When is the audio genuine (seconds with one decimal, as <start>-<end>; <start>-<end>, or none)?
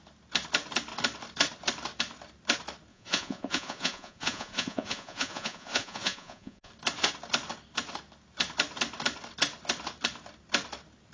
0.0-2.9; 6.7-11.1